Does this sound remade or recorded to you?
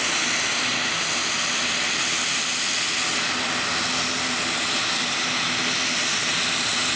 recorded